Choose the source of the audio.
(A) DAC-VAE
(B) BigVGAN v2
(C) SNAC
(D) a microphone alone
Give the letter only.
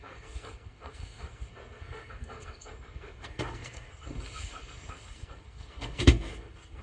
C